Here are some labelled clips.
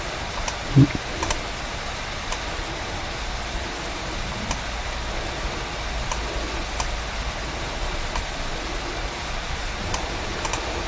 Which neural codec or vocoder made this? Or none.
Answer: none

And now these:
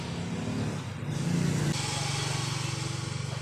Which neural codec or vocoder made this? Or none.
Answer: none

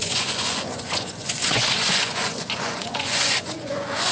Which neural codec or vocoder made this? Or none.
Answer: vocoder, Vocos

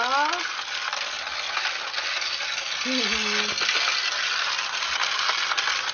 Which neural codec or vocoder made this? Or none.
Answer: none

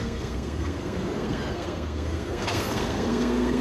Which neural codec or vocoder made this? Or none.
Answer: codec, SNAC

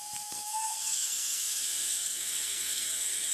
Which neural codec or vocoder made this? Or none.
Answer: codec, SNAC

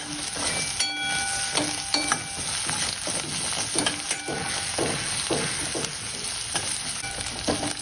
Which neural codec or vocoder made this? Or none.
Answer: none